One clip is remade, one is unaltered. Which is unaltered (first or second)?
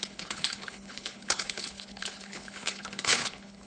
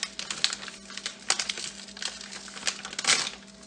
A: second